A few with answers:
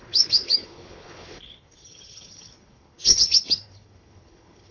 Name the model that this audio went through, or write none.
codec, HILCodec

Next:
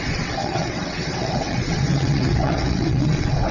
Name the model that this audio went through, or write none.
vocoder, WaveNeXt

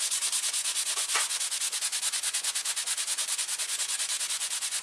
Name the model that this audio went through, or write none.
vocoder, Vocos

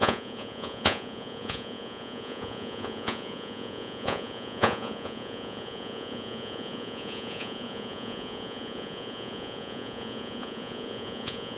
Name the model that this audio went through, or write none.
vocoder, Vocos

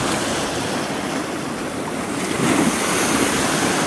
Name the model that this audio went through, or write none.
none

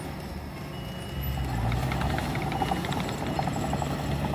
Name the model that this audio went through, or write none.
none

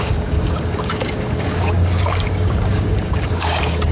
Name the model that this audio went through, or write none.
codec, DAC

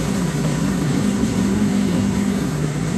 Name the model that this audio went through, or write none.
codec, SNAC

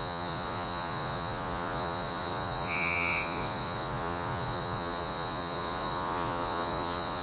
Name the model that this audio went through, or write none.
vocoder, Vocos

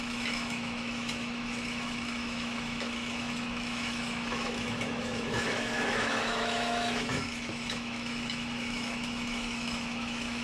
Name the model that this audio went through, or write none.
autoencoder, DAC-VAE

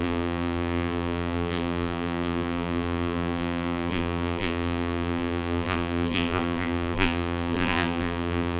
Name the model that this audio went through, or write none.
vocoder, BigVGAN v2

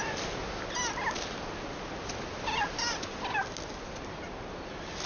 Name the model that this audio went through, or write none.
none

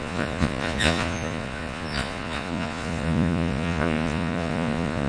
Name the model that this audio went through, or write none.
vocoder, Vocos